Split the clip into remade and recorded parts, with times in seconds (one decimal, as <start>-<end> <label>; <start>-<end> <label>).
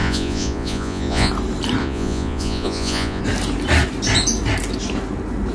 0.0-1.3 remade; 1.3-1.8 recorded; 1.8-3.2 remade; 3.2-5.5 recorded